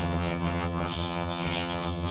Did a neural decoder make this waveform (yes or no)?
yes